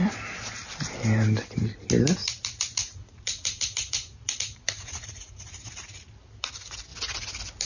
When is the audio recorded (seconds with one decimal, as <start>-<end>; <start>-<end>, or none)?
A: 0.0-2.2; 6.1-7.6